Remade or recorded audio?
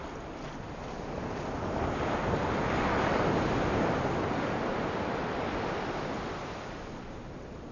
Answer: recorded